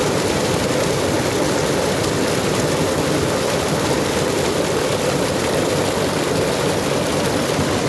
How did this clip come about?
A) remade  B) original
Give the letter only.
B